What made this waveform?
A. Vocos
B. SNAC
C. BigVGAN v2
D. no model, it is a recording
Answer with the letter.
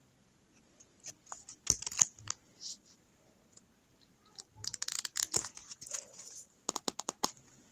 D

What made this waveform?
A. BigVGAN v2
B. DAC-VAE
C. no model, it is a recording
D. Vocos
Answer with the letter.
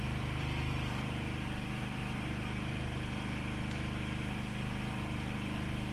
A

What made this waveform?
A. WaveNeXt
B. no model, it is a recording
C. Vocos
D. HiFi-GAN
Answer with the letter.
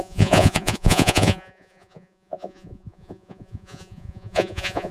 C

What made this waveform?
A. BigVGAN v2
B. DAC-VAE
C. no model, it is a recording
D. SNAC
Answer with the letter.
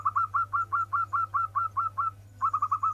C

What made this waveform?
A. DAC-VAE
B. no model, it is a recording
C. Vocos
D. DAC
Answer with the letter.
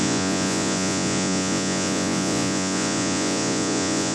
C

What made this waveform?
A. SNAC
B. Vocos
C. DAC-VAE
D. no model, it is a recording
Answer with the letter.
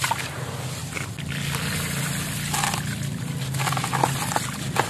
D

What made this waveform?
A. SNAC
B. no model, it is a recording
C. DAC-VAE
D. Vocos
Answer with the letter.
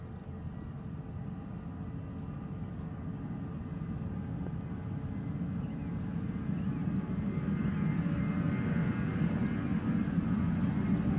B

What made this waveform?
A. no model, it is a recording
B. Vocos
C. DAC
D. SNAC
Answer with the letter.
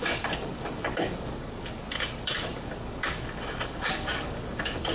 C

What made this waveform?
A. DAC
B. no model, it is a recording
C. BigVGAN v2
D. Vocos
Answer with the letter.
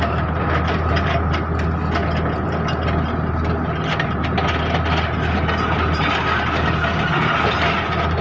B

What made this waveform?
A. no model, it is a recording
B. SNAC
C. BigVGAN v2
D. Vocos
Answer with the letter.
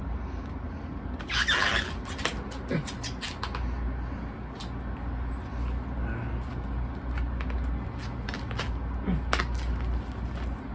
A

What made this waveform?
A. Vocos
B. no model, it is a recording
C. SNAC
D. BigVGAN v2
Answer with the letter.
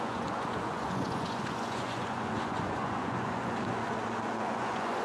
A